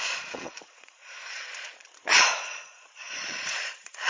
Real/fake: fake